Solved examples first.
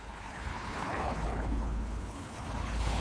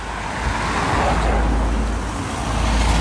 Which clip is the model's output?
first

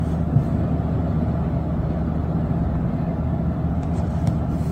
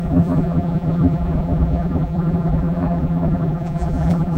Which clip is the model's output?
second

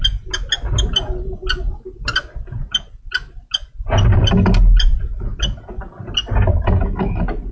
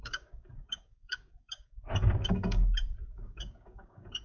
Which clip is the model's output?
second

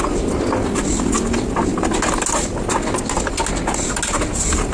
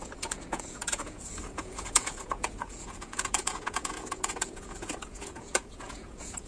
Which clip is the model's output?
second